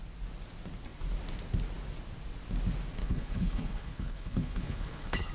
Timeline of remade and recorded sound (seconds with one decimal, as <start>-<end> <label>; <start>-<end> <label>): 0.0-3.0 recorded; 3.0-5.3 remade